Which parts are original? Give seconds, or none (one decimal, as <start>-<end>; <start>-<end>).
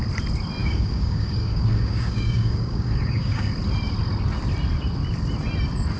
0.0-0.6; 3.5-6.0